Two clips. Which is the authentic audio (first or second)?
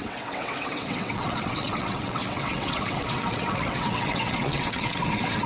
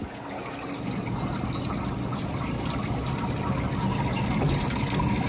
second